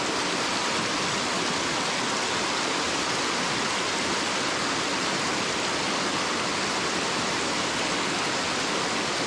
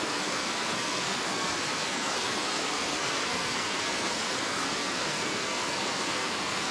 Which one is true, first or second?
first